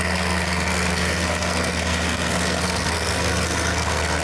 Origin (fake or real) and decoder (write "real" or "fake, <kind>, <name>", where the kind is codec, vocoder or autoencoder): fake, codec, SNAC